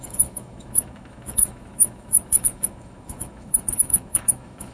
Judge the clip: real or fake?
fake